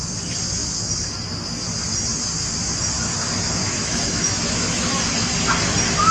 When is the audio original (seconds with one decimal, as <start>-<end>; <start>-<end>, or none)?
0.0-3.6; 5.0-6.1